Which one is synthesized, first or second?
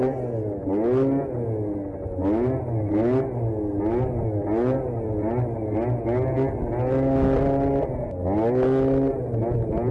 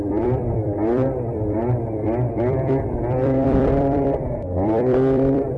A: second